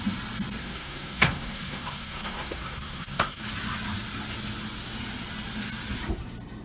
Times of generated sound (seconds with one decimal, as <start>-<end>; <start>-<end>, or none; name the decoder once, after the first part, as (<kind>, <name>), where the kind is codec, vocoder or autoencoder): 0.6-3.4 (codec, SNAC)